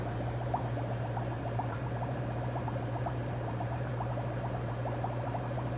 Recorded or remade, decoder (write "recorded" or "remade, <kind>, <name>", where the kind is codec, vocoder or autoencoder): remade, vocoder, BigVGAN v2